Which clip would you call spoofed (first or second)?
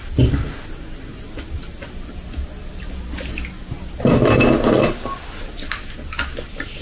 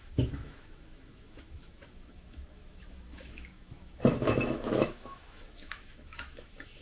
second